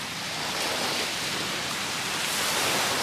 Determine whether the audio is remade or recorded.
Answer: recorded